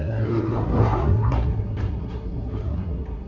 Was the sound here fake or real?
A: fake